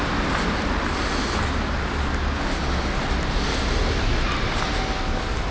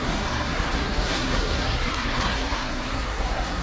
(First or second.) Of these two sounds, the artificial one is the second